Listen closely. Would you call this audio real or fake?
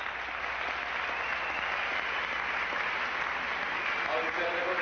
real